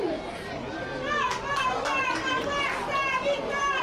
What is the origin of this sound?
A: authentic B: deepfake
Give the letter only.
A